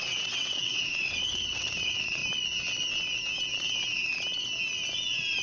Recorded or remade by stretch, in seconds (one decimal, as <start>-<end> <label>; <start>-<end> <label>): 0.0-2.2 remade; 2.2-5.4 recorded